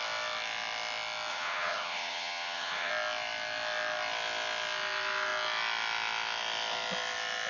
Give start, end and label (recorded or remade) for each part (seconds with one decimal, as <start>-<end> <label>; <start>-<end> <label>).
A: 0.0-1.3 recorded; 1.3-2.9 remade; 2.9-7.5 recorded

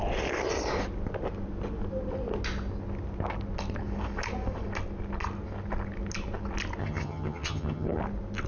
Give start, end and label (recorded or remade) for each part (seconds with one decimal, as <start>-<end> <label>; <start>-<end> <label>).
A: 0.0-6.8 recorded; 6.8-8.0 remade; 8.0-8.5 recorded

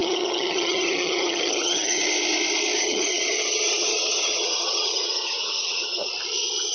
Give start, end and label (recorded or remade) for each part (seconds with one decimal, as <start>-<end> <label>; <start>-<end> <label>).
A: 0.0-2.0 remade; 2.0-2.8 recorded; 2.8-6.1 remade; 6.1-6.7 recorded

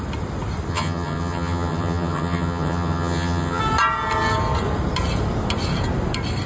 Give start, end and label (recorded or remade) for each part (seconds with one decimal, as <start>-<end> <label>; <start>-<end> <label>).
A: 0.0-0.7 recorded; 0.7-3.6 remade; 3.6-6.5 recorded

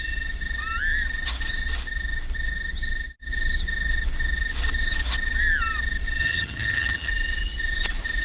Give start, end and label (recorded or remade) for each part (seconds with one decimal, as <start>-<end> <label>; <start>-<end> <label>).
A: 0.0-6.2 recorded; 6.2-7.1 remade; 7.1-8.2 recorded